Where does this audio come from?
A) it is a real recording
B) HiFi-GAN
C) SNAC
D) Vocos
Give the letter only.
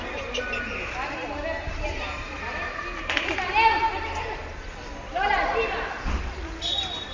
A